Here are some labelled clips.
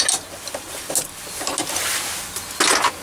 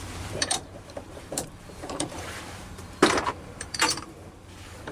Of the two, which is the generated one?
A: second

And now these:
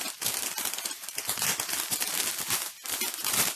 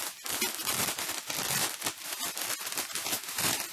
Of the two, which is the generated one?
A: first